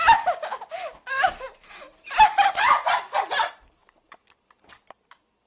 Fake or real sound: fake